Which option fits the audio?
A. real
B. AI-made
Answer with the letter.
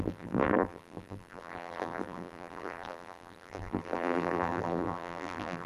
B